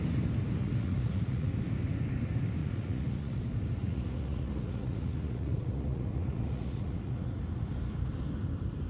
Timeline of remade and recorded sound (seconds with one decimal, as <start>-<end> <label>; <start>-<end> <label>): 0.0-0.6 recorded; 0.6-1.5 remade; 1.5-2.6 recorded; 2.6-3.4 remade; 3.4-3.8 recorded; 3.8-7.4 remade; 7.4-8.9 recorded